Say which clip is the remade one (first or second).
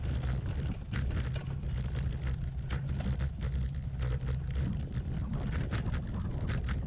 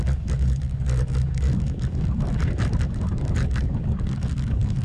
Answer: second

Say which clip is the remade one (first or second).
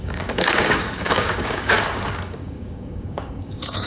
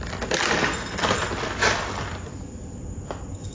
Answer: first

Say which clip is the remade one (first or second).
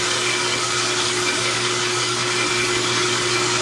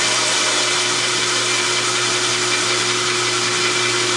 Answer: first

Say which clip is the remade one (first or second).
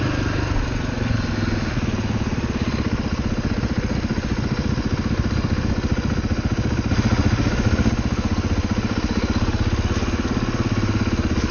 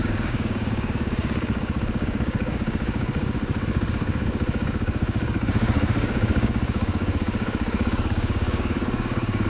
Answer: second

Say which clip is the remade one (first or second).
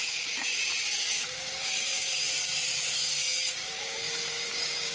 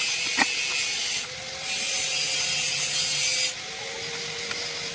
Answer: first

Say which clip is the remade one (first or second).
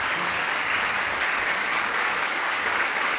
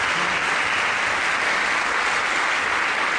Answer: first